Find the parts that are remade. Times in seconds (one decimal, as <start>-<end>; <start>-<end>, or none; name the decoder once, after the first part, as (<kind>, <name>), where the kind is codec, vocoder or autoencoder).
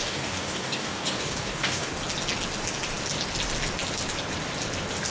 0.0-1.9 (codec, DAC)